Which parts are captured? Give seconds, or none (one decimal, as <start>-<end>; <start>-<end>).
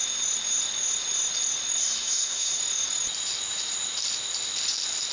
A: 0.0-1.8; 2.6-5.1